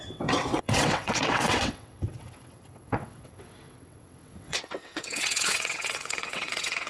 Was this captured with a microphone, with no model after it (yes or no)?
no